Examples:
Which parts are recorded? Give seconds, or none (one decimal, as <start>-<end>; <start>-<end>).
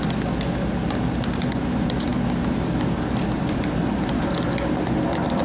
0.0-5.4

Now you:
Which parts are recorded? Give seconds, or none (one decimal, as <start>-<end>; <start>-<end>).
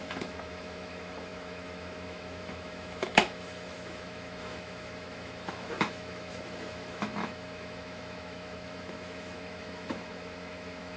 none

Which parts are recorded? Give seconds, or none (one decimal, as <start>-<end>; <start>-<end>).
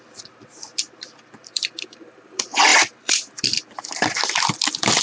none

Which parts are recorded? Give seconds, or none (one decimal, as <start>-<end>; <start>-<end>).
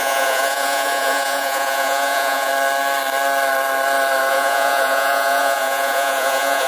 2.5-4.3